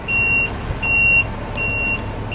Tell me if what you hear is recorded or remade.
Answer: recorded